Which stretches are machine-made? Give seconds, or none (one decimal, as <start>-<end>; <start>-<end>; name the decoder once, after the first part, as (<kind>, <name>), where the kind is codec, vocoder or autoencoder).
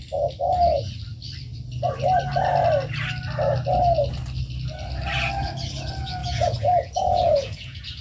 6.2-8.0 (vocoder, Vocos)